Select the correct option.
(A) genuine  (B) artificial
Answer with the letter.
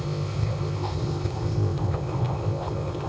B